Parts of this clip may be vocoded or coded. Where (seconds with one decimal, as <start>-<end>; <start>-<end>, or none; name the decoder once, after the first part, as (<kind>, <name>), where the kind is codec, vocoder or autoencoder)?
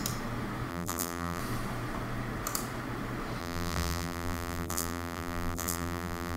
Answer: 0.7-1.4 (vocoder, BigVGAN v2); 3.4-6.4